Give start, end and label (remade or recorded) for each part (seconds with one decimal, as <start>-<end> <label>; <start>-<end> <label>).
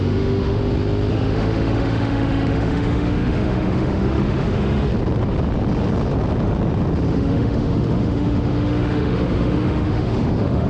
0.0-0.6 remade; 0.6-1.1 recorded; 1.1-4.9 remade; 4.9-7.1 recorded; 7.1-10.7 remade